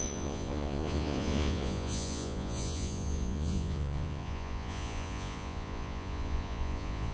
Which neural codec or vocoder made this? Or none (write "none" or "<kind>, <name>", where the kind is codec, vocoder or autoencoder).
vocoder, Vocos